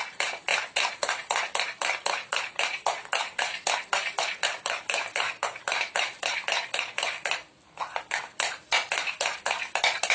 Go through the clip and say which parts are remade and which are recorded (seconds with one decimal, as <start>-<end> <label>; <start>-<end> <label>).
0.0-10.1 recorded

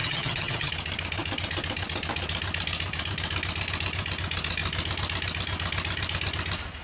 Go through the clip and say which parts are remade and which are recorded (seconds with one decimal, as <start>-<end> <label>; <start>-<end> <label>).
0.0-0.7 remade; 0.7-6.8 recorded

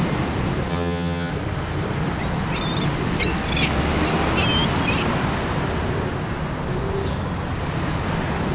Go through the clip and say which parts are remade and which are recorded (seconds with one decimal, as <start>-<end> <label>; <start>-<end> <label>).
0.0-0.7 recorded; 0.7-1.3 remade; 1.3-8.5 recorded